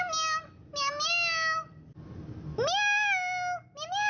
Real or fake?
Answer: real